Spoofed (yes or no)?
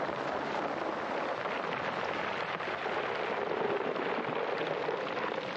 no